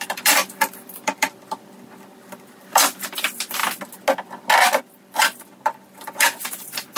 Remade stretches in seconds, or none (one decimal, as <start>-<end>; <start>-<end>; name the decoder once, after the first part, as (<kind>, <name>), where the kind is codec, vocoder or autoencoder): 0.0-3.6 (vocoder, BigVGAN v2); 5.0-7.0